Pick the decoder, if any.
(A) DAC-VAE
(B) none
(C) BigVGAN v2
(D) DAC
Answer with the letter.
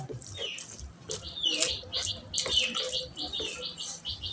B